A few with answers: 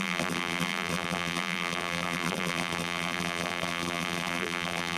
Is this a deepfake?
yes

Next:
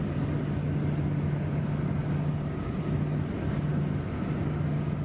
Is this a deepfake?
no